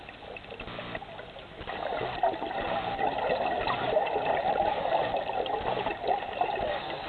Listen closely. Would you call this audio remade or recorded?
recorded